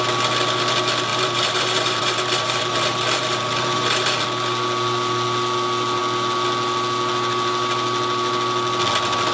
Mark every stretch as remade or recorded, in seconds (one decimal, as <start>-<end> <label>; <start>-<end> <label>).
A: 0.0-1.1 recorded; 1.1-4.2 remade; 4.2-9.3 recorded